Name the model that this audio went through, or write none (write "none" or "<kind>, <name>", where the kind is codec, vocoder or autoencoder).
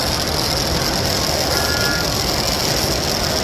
none